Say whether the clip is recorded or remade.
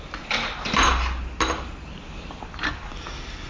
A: recorded